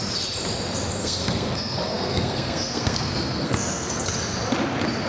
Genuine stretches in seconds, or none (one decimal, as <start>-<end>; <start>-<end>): 0.0-1.0; 4.1-5.1